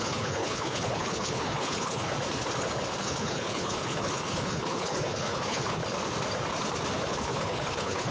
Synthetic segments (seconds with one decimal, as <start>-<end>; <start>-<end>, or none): 0.0-2.1; 3.0-5.8; 7.1-8.1

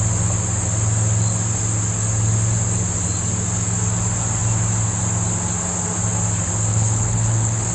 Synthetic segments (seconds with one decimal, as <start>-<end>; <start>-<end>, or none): 6.7-7.7

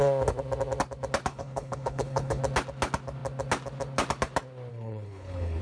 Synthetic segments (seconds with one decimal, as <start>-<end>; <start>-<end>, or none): 1.3-2.4; 4.7-5.6

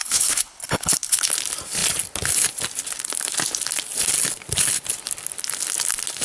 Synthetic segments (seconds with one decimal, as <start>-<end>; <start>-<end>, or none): 0.0-1.3

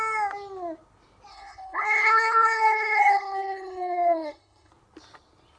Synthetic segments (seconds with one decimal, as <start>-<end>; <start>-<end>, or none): 1.3-4.7

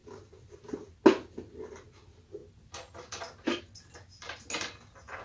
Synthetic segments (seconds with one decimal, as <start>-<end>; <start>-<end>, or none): none

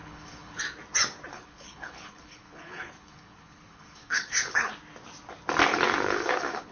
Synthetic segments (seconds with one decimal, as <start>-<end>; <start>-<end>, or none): 0.0-0.6; 1.3-4.7; 5.7-6.7

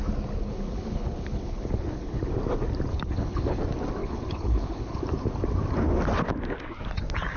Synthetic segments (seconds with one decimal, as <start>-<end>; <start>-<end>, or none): 0.4-2.2; 2.9-3.6; 4.0-5.0